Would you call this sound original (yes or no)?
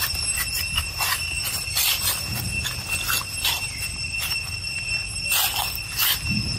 yes